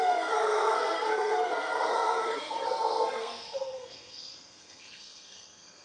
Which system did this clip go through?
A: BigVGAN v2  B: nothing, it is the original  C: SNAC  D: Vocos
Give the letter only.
C